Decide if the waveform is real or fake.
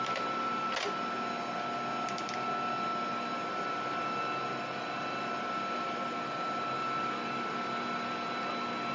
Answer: real